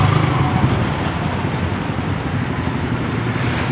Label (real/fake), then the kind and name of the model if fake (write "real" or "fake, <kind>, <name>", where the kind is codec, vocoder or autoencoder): real